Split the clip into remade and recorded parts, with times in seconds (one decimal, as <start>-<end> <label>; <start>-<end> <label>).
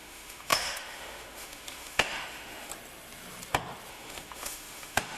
0.0-2.7 remade; 2.7-3.9 recorded; 3.9-5.2 remade